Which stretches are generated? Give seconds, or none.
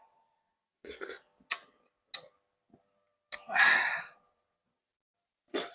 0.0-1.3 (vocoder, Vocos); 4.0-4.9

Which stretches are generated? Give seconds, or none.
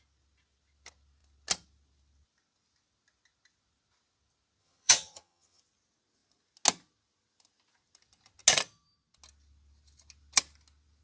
4.6-5.6 (vocoder, HiFi-GAN)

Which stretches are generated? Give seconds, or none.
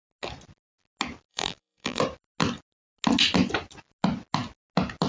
1.3-2.0 (vocoder, BigVGAN v2)